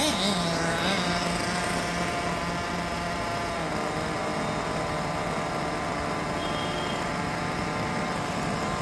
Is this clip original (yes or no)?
yes